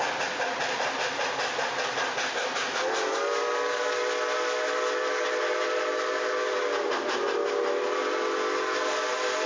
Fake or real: real